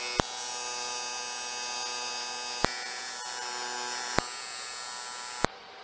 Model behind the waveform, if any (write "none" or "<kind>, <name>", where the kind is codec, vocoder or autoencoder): none